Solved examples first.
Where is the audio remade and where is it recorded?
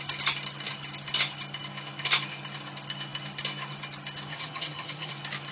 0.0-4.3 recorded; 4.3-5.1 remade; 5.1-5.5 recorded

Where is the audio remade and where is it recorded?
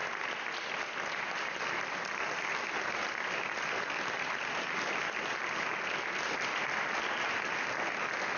0.0-8.4 recorded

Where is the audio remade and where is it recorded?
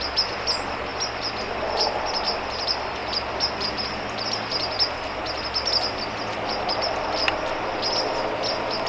0.0-8.9 recorded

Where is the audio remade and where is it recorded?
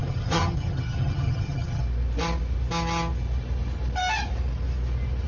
0.0-1.8 remade; 1.8-5.3 recorded